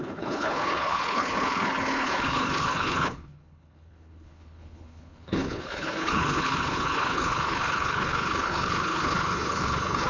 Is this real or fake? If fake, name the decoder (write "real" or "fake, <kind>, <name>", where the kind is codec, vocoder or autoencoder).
fake, codec, HILCodec